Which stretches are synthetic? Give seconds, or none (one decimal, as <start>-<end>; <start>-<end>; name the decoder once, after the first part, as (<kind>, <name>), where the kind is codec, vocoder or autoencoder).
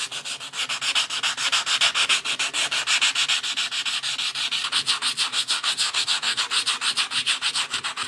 5.3-6.4 (codec, DAC)